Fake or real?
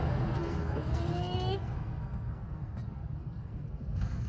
fake